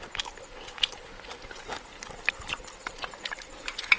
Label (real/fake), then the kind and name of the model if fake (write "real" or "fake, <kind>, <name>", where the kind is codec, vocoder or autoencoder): real